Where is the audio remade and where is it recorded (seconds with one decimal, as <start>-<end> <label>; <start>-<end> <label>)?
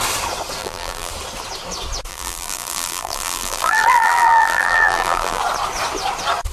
0.0-0.6 recorded; 0.6-1.1 remade; 1.1-2.1 recorded; 2.1-5.4 remade; 5.4-6.5 recorded